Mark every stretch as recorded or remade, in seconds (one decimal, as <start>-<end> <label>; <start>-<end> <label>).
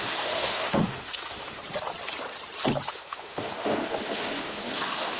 0.0-1.6 remade; 1.6-2.9 recorded; 2.9-5.2 remade